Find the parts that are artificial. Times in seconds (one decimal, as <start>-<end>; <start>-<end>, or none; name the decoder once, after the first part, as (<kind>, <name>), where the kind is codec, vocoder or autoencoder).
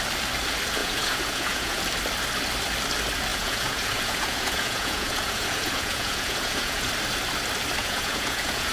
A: 0.8-1.8 (vocoder, Vocos); 3.3-6.9; 7.8-8.7